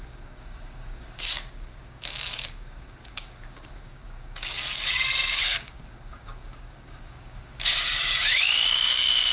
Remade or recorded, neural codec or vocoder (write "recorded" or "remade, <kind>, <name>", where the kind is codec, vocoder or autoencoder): remade, codec, DAC